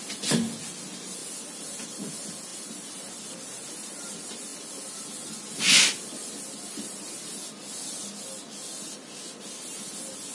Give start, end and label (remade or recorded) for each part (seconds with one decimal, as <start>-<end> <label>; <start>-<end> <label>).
0.0-2.5 recorded; 2.5-3.3 remade; 3.3-10.3 recorded